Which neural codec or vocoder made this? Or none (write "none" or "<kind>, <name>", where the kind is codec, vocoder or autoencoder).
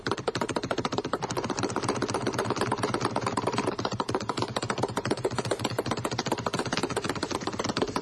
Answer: vocoder, BigVGAN v2